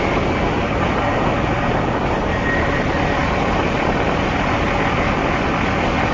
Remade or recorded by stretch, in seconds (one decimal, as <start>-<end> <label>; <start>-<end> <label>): 0.0-6.1 recorded

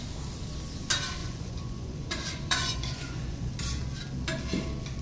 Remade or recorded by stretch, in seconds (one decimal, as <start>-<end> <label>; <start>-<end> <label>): 0.0-1.2 recorded; 1.2-3.5 remade; 3.5-5.0 recorded

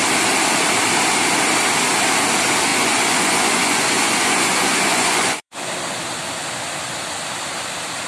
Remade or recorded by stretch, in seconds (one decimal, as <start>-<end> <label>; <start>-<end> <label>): 0.0-2.7 recorded; 2.7-5.7 remade; 5.7-8.1 recorded

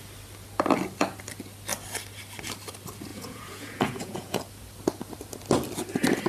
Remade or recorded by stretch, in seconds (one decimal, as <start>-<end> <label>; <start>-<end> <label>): 0.0-3.1 recorded; 3.1-4.4 remade; 4.4-6.3 recorded